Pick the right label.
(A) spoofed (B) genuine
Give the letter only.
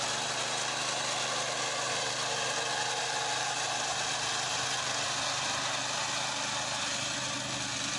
B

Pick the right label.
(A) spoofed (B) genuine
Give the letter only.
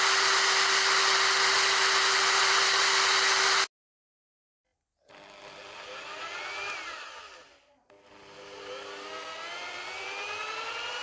B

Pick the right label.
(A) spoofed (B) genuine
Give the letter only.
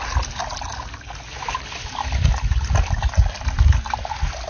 B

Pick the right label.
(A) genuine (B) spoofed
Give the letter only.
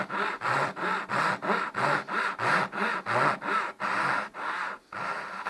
A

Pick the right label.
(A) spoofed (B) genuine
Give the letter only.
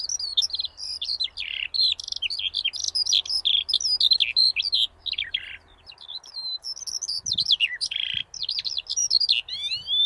B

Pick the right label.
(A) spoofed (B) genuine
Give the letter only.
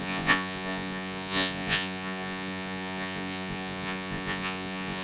A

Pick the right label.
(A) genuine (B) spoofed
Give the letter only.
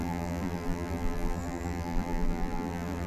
B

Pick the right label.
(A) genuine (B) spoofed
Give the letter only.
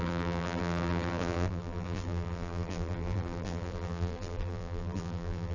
B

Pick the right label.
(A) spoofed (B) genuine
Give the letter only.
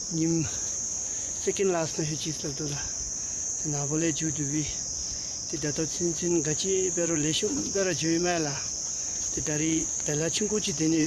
A